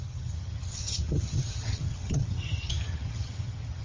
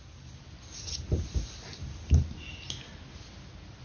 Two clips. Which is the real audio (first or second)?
second